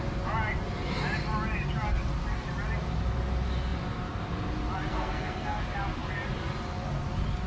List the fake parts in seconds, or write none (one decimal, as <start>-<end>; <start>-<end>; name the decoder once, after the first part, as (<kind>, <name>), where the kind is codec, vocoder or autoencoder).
4.9-5.6 (codec, SNAC)